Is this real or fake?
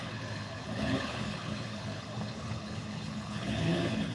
fake